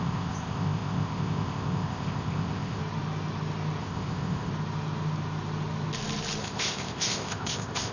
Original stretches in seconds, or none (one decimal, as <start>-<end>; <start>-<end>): 2.8-3.8; 4.5-6.4